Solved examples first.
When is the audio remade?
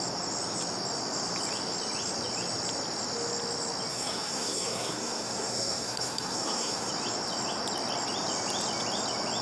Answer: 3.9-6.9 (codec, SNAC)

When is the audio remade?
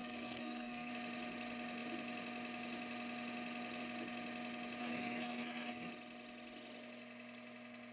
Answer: 0.0-0.9 (codec, SNAC); 4.8-5.9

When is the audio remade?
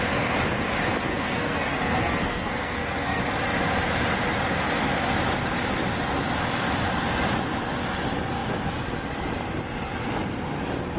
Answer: 1.1-3.2 (codec, SNAC)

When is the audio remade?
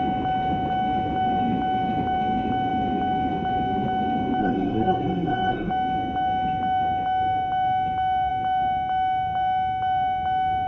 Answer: 4.4-5.7 (codec, SNAC)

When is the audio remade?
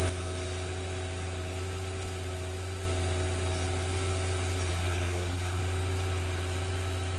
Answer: 4.7-5.6 (codec, SNAC)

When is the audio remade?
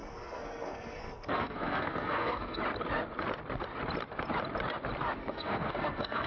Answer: 0.0-2.6 (codec, SNAC); 5.2-6.3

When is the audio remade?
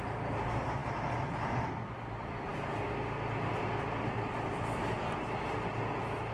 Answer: none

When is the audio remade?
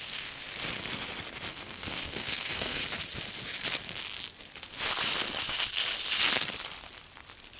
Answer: 0.0-0.4 (codec, SNAC); 1.5-2.8